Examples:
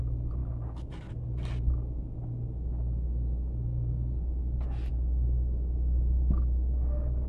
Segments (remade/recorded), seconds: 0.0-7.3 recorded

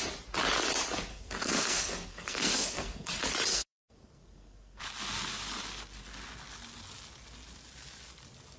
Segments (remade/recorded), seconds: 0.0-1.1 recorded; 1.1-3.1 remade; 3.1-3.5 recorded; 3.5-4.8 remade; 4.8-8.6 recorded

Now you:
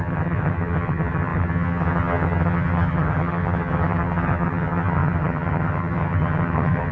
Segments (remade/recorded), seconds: 0.0-6.9 remade

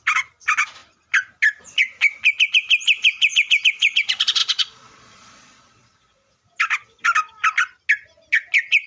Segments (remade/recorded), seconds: 0.0-4.4 recorded; 4.4-6.4 remade; 6.4-8.9 recorded

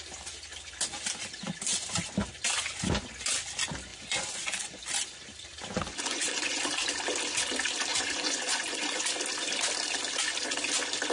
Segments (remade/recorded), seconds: 0.0-3.9 recorded; 3.9-4.8 remade; 4.8-5.9 recorded; 5.9-6.6 remade; 6.6-7.9 recorded; 7.9-9.0 remade; 9.0-11.1 recorded

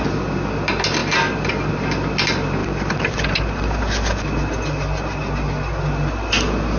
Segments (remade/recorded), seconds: 0.0-1.0 recorded; 1.0-1.7 remade; 1.7-6.8 recorded